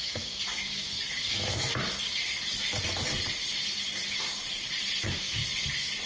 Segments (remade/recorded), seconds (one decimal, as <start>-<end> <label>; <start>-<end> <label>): 0.0-1.8 remade; 1.8-5.0 recorded; 5.0-5.4 remade; 5.4-6.1 recorded